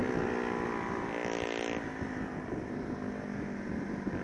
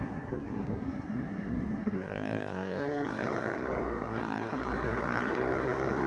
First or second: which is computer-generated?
second